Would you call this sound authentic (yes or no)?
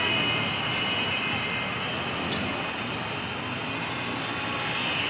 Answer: yes